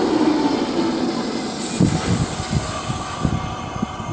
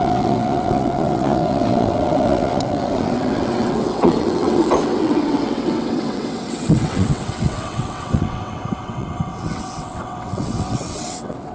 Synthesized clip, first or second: second